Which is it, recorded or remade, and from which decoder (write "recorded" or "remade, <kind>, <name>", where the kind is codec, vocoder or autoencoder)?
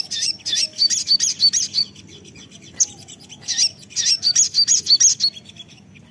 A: recorded